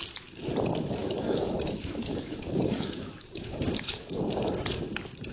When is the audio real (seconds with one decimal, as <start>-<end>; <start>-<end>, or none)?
0.0-1.0; 4.2-5.3